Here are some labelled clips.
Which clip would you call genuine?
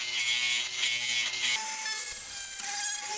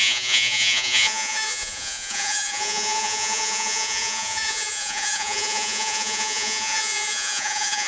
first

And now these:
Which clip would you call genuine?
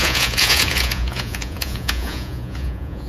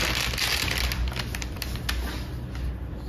second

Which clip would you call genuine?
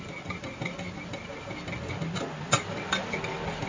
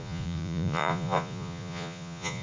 first